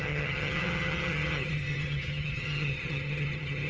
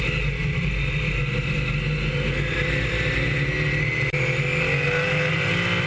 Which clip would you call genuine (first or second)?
second